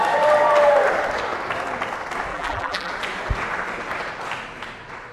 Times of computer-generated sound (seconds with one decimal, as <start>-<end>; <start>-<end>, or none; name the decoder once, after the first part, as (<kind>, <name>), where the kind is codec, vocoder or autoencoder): 2.3-2.9 (vocoder, BigVGAN v2)